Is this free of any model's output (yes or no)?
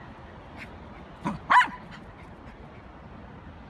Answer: yes